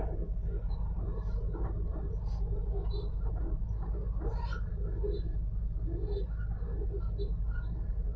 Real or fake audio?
real